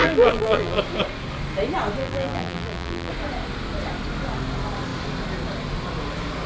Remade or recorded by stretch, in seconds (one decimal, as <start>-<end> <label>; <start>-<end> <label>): 0.0-0.8 remade; 0.8-2.0 recorded; 2.0-3.1 remade; 3.1-6.5 recorded